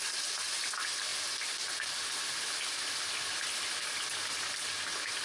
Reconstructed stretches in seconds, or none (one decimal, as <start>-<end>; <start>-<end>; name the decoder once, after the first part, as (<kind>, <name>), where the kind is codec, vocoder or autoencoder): none